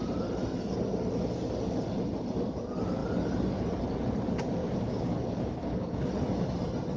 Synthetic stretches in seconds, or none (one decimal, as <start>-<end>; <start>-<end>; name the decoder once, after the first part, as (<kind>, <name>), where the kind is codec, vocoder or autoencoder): 4.6-6.1 (codec, DAC)